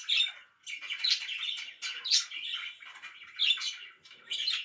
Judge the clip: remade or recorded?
recorded